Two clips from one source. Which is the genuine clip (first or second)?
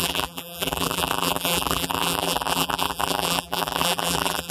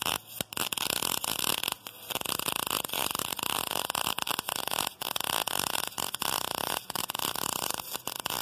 second